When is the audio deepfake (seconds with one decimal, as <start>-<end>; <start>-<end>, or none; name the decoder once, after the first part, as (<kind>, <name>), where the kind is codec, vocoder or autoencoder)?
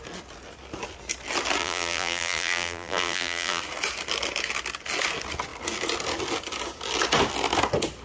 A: 1.6-3.6 (vocoder, BigVGAN v2)